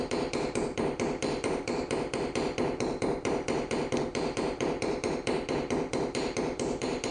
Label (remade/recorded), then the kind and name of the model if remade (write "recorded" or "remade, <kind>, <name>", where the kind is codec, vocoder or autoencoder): remade, vocoder, BigVGAN v2